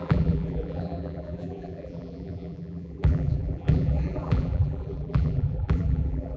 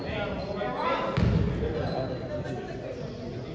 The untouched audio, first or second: second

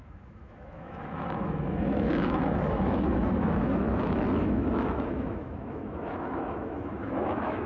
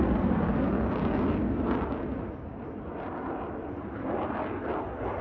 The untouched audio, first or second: second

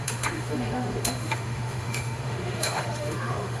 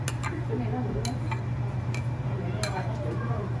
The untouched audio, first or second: second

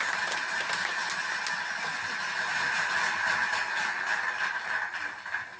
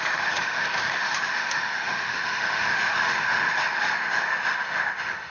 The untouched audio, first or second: first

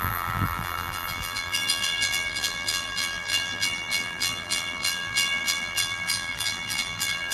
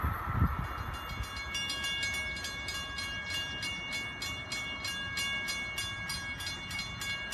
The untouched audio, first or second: second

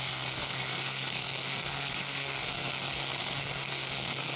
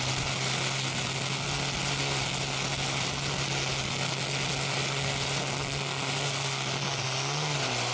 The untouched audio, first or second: second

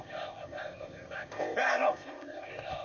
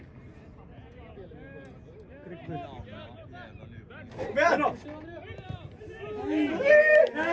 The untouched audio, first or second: second